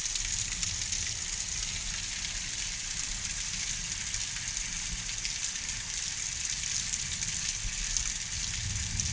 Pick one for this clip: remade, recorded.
recorded